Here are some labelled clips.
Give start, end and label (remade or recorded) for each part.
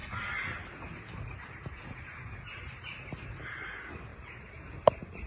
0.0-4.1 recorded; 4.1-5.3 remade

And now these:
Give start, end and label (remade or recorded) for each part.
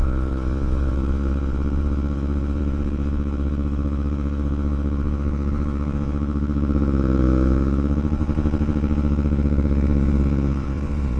0.0-11.2 remade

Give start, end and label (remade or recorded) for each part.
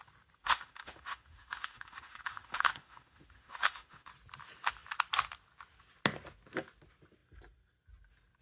0.0-0.4 recorded; 0.4-4.1 remade; 4.1-8.4 recorded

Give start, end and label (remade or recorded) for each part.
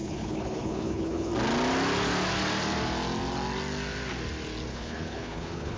0.0-1.3 remade; 1.3-4.7 recorded; 4.7-5.8 remade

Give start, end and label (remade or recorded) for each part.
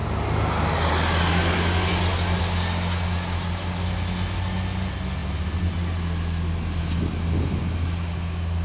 0.0-8.6 recorded